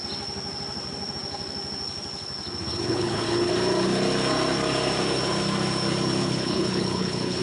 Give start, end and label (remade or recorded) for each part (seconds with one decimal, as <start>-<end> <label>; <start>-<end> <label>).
0.0-2.7 recorded; 2.7-3.5 remade; 3.5-6.2 recorded; 6.2-7.4 remade